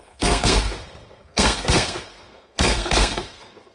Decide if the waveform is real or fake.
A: fake